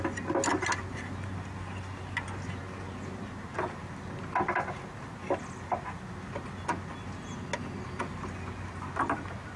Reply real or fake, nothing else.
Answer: real